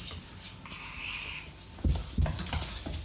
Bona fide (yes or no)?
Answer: yes